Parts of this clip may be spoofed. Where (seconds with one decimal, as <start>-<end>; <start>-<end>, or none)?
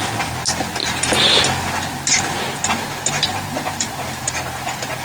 0.8-1.4; 3.3-4.2